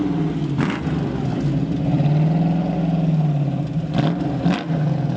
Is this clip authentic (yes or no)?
yes